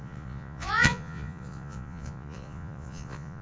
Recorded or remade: remade